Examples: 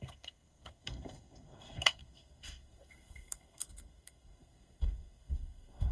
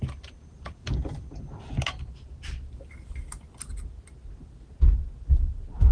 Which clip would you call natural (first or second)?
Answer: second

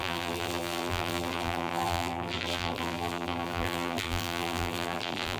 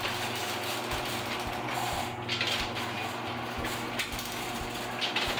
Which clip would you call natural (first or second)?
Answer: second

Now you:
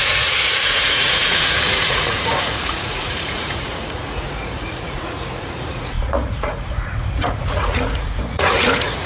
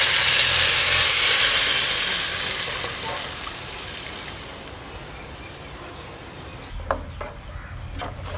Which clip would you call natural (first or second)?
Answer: second